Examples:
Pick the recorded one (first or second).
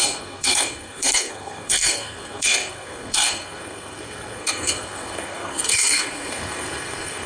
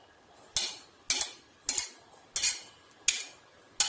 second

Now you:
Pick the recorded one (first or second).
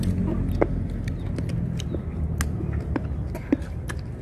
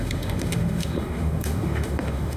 first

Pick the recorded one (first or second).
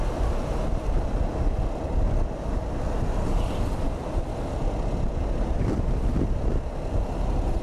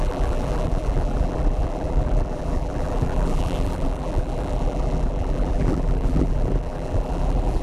first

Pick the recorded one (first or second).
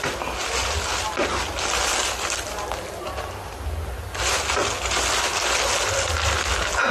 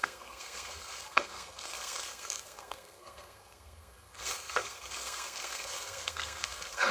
first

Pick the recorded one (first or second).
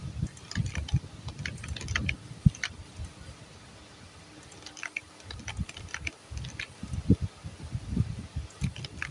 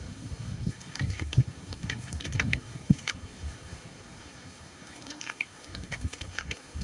first